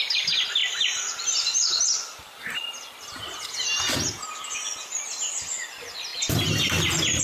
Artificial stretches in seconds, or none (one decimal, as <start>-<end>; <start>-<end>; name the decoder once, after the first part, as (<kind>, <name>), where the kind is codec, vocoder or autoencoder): none